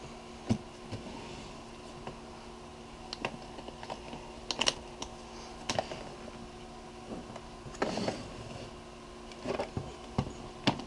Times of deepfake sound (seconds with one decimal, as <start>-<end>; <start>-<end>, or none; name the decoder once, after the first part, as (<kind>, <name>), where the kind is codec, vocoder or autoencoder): none